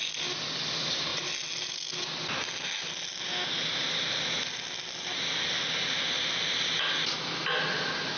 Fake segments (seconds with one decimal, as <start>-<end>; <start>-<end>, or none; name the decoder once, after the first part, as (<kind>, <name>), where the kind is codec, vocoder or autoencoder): none